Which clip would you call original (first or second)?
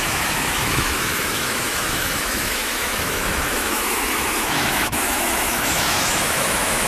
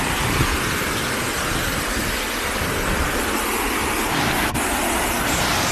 second